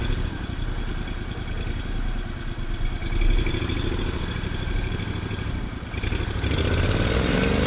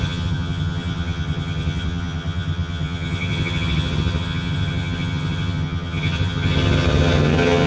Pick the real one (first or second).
first